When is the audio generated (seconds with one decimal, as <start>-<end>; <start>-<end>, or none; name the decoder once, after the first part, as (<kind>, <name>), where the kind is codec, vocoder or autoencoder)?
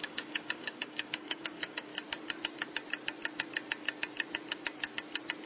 0.0-1.9 (codec, DAC)